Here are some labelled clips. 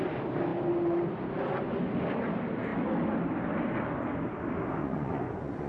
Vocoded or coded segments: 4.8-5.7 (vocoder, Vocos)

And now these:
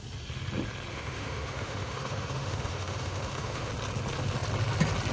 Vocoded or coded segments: 0.9-3.7 (autoencoder, DAC-VAE)

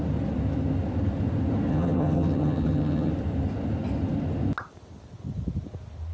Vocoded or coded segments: 1.7-3.1 (vocoder, HiFi-GAN)

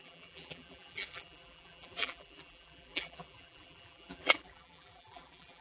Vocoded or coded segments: 0.0-5.6 (vocoder, BigVGAN v2)

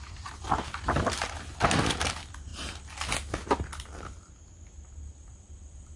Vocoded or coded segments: none

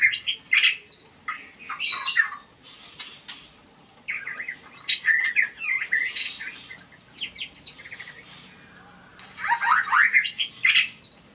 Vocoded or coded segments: none